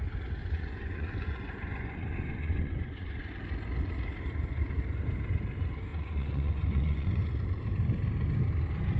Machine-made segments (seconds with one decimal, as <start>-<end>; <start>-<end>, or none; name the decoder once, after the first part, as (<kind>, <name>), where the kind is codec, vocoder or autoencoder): 0.4-3.3 (vocoder, Vocos); 5.9-7.2